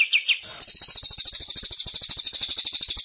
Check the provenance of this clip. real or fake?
real